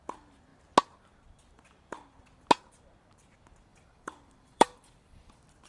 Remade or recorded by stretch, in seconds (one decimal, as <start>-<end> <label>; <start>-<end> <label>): 0.0-3.7 recorded; 3.7-5.3 remade; 5.3-5.7 recorded